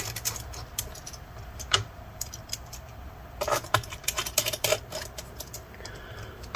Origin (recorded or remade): remade